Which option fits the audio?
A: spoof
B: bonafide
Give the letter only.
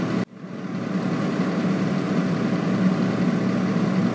B